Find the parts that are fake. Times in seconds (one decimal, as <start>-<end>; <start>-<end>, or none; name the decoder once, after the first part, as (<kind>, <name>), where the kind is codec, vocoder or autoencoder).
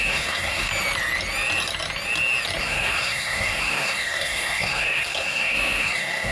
0.0-0.7 (codec, SNAC); 2.6-6.3